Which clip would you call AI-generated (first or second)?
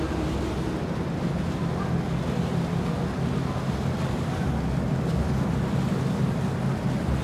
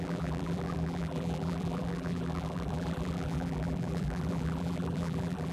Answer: second